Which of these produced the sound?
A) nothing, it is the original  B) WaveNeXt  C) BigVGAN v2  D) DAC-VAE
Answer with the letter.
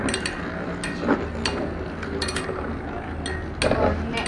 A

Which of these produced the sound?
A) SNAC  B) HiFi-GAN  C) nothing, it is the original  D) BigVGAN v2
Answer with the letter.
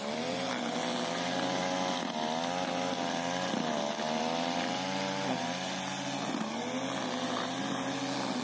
C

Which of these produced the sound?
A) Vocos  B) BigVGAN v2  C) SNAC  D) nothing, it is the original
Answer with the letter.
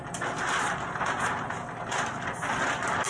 D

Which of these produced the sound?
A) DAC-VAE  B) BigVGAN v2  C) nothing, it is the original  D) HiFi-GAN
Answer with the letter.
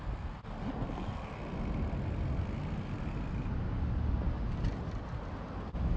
C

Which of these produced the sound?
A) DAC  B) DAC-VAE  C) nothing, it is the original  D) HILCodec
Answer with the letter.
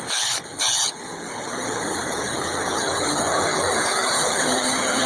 D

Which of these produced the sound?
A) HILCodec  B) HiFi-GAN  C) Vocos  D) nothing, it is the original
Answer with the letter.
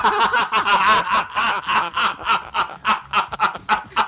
D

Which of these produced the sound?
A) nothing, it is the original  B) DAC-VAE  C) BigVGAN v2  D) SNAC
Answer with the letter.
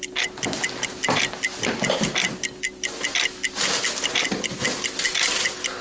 A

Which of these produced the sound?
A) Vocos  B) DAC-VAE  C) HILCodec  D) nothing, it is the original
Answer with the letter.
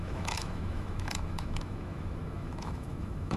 B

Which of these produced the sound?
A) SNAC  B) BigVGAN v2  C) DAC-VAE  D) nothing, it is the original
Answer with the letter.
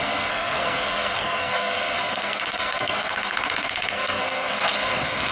A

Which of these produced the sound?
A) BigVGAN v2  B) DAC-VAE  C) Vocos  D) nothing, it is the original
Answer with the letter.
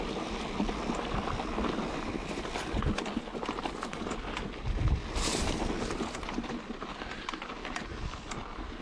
D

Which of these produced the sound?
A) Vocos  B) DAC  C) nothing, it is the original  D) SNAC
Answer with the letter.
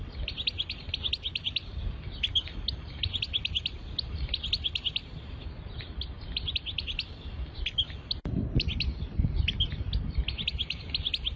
C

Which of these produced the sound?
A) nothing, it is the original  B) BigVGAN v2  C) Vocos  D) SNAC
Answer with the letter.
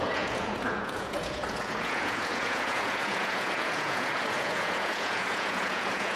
C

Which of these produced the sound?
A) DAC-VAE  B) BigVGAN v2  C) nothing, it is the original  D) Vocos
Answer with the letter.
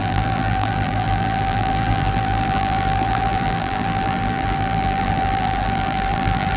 B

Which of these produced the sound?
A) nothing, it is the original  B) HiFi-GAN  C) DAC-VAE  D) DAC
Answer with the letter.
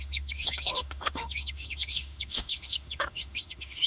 C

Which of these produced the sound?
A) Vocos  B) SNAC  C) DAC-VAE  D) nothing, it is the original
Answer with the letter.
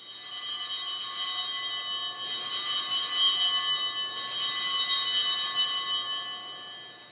D